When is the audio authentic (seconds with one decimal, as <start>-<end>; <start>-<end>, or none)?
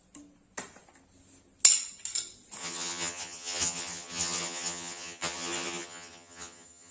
0.0-2.6